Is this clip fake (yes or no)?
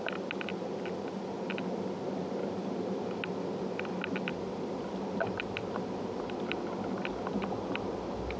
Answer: no